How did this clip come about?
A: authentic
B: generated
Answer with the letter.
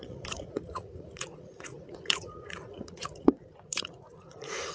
B